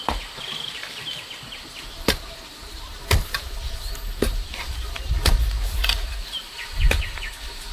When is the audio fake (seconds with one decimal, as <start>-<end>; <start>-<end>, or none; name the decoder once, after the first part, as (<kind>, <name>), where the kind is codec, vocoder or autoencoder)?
2.9-7.7 (vocoder, BigVGAN v2)

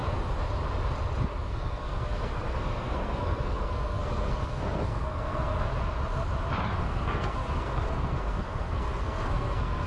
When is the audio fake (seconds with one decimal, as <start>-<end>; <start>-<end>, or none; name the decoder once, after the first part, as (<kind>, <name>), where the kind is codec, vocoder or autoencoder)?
1.4-5.7 (codec, SNAC); 6.8-9.9

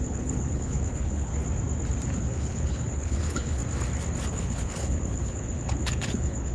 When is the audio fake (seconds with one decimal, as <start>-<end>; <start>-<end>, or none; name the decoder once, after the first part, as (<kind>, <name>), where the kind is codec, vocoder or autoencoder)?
0.0-1.3 (codec, HILCodec); 2.2-3.6; 4.3-6.5